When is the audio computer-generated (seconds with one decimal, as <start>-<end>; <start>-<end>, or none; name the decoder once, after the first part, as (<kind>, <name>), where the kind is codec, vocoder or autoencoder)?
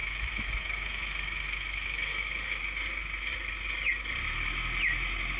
0.0-2.6 (autoencoder, DAC-VAE)